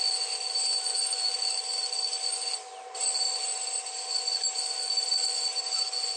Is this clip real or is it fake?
real